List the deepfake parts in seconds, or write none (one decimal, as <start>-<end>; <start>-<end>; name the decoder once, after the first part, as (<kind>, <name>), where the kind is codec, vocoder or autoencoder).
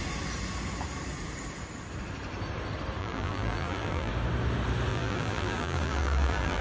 3.0-4.1 (vocoder, BigVGAN v2); 4.9-6.6